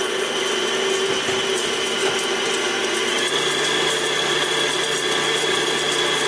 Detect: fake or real real